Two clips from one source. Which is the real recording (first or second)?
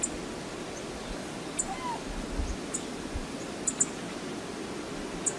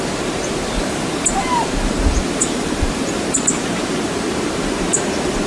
first